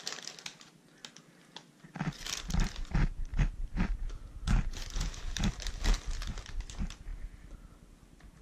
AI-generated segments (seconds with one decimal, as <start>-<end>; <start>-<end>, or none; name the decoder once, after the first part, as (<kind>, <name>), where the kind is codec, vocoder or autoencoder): none